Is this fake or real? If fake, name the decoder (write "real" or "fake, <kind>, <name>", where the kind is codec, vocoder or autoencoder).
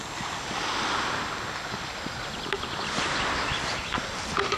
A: real